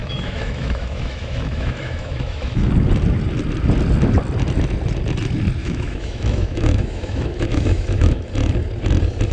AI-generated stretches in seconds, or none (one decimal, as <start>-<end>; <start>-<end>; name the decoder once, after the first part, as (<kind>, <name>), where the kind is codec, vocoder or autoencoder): 0.0-2.7 (autoencoder, DAC-VAE); 5.6-8.3